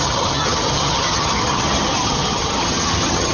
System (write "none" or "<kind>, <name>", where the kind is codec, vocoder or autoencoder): vocoder, HiFi-GAN